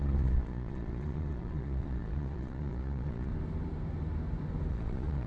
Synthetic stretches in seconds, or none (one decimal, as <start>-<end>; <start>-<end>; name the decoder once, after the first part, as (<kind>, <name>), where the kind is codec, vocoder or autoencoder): 0.0-3.3 (vocoder, Vocos); 4.7-5.3

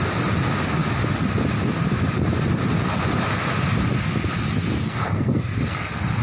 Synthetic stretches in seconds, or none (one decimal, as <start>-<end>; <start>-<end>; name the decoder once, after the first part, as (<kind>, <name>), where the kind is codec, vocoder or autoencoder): 4.7-6.2 (codec, SNAC)